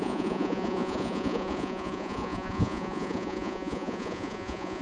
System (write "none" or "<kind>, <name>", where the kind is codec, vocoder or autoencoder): vocoder, Vocos